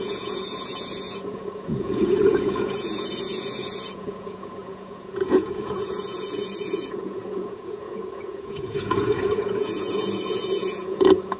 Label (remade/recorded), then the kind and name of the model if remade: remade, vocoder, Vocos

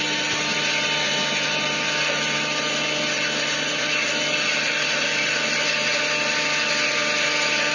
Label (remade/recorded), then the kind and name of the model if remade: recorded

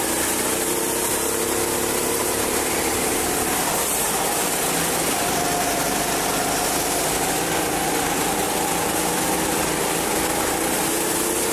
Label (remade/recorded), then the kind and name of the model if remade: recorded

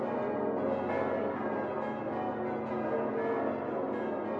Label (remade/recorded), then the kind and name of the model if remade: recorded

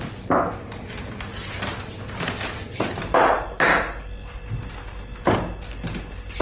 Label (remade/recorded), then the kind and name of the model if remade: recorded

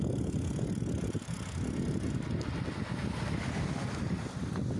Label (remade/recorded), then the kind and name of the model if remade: recorded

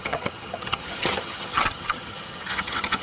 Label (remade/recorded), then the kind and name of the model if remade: remade, vocoder, HiFi-GAN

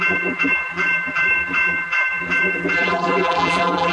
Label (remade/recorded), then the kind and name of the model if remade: remade, vocoder, BigVGAN v2